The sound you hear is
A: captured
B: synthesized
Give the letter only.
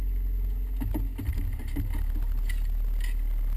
A